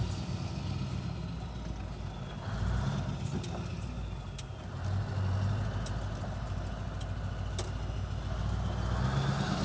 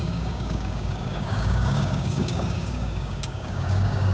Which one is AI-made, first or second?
second